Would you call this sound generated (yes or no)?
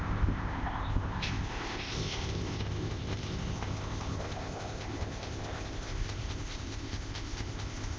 yes